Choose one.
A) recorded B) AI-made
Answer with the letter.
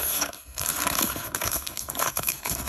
B